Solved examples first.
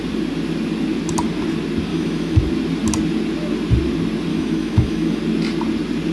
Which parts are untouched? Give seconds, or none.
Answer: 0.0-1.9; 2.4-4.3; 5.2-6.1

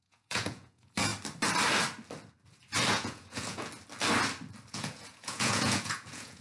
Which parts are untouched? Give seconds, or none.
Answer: 1.1-2.9; 3.7-4.7

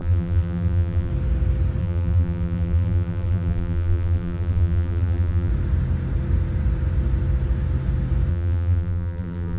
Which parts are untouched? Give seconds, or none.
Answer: 1.1-1.8; 5.5-8.3

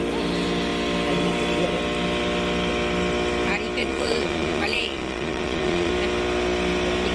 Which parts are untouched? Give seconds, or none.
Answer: 0.0-3.8; 5.9-7.1

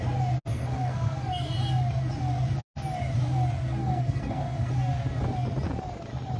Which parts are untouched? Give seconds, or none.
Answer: 0.0-0.5; 1.5-3.8; 4.7-6.4